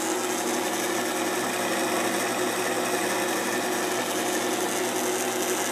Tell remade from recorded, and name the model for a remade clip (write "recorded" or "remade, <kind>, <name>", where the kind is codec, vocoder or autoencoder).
recorded